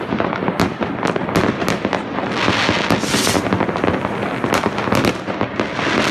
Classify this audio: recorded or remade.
recorded